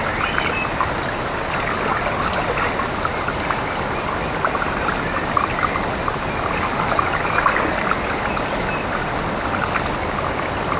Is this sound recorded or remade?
recorded